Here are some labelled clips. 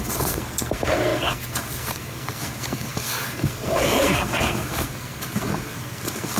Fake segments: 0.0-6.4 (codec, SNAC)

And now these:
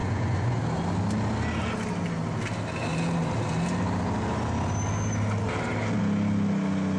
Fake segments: 0.0-0.6 (vocoder, Vocos)

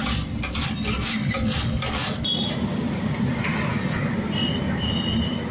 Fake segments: none

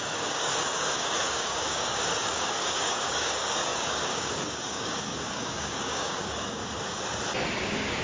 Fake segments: 0.0-6.6 (codec, DAC); 7.6-8.0

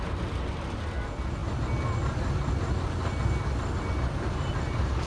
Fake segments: none

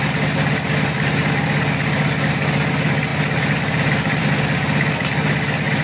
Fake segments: none

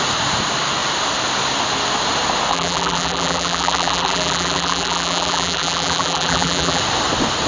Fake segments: 2.5-6.8 (vocoder, BigVGAN v2)